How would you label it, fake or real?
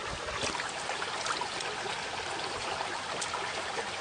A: real